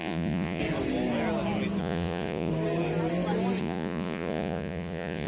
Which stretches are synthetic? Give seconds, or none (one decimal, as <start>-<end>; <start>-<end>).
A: 0.0-0.6; 1.8-2.5; 3.6-5.3